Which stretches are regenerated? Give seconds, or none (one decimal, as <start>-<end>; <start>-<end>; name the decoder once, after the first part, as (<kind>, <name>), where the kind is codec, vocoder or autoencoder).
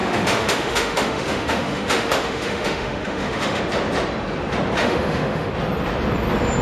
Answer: 0.0-3.6 (autoencoder, DAC-VAE); 4.8-5.5